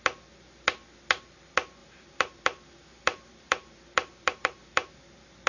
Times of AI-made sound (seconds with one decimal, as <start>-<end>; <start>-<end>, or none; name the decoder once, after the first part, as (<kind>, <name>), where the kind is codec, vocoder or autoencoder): 1.8-4.9 (vocoder, BigVGAN v2)

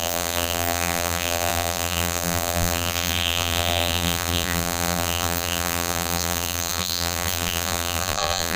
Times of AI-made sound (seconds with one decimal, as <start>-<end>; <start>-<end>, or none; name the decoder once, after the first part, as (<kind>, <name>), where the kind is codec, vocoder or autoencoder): 0.0-8.6 (vocoder, BigVGAN v2)

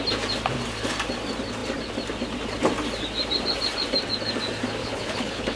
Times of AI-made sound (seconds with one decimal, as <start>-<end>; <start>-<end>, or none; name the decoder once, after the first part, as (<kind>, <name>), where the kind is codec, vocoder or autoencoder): 4.8-5.6 (codec, HILCodec)

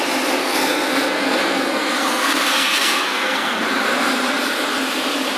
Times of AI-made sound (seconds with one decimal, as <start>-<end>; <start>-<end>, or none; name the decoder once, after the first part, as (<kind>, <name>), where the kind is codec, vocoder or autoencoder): 0.4-3.6 (codec, SNAC)